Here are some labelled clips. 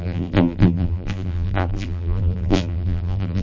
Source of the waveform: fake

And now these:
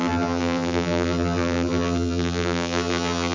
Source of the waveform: fake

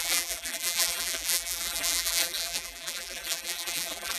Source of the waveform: fake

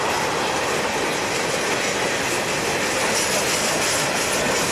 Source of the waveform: real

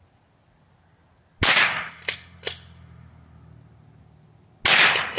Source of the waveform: real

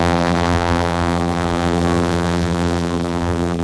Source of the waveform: fake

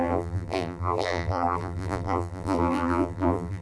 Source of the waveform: fake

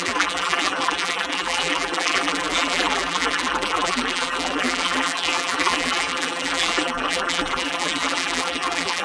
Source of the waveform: fake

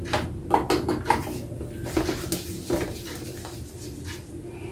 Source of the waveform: real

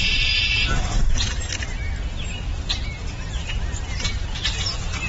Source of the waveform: real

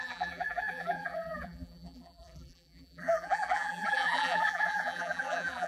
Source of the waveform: fake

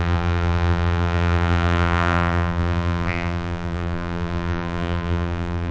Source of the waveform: fake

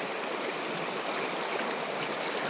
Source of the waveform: real